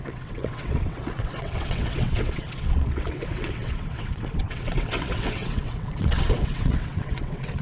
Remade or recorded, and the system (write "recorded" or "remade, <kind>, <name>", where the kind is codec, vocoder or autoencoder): remade, vocoder, WaveNeXt